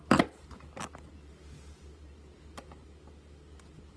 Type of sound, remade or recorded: recorded